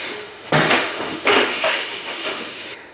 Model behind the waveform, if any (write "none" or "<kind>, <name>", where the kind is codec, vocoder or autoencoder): autoencoder, DAC-VAE